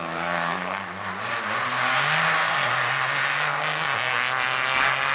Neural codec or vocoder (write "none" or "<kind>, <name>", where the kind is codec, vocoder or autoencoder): none